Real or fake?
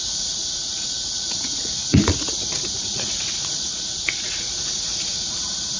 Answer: fake